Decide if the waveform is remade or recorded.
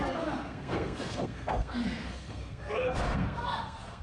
remade